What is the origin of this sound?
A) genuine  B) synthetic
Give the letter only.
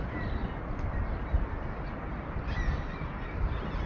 B